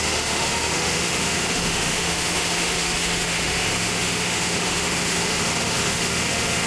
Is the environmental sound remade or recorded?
remade